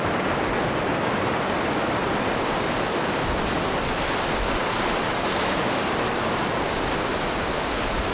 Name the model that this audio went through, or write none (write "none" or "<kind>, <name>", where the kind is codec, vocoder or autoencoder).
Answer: none